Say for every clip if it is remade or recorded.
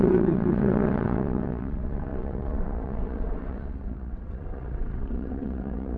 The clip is remade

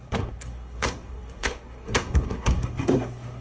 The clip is remade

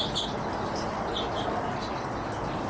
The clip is recorded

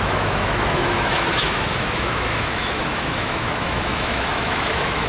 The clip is remade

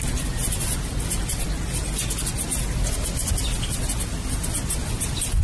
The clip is recorded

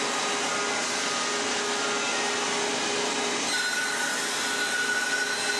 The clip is recorded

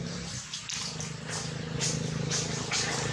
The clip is recorded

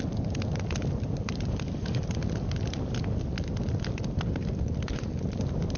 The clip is recorded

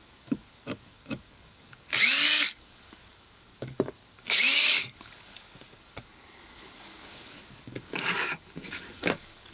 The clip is remade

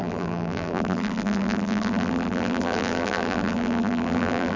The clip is remade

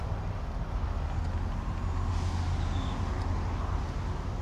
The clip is recorded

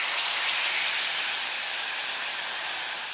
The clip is recorded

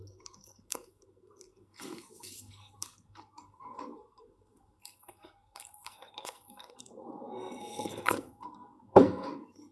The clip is remade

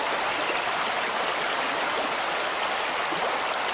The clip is recorded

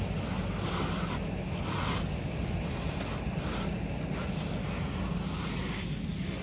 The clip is recorded